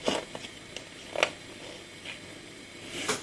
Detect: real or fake real